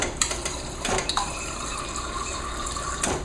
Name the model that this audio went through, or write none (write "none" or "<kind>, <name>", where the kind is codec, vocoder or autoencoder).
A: vocoder, BigVGAN v2